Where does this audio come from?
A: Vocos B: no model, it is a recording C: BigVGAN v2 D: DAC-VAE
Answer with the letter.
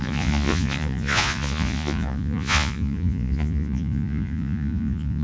A